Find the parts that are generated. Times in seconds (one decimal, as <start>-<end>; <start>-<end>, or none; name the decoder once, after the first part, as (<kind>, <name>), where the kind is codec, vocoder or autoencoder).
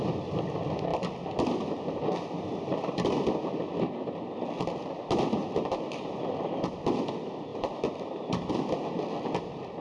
5.4-6.2 (vocoder, BigVGAN v2); 7.5-8.5